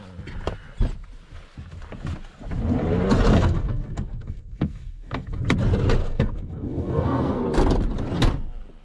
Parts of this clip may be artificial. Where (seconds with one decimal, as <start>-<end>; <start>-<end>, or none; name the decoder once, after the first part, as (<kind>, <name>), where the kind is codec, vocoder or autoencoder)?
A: 3.3-5.4 (codec, SNAC); 6.0-7.4